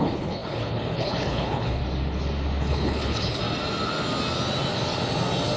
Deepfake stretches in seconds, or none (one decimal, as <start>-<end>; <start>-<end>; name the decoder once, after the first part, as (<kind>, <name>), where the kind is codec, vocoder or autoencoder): 0.0-1.8 (codec, HILCodec); 2.6-3.4